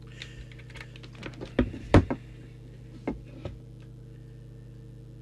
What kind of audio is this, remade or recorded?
recorded